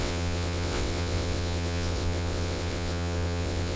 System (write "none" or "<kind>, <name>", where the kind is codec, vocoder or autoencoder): vocoder, WaveNeXt